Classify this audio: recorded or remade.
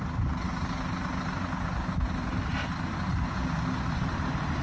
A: recorded